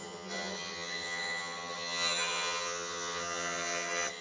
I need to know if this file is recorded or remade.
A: remade